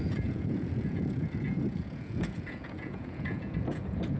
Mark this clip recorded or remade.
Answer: remade